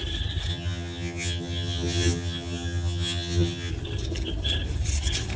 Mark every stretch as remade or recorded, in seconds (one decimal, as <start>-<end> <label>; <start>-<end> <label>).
0.0-0.5 recorded; 0.5-3.7 remade; 3.7-5.4 recorded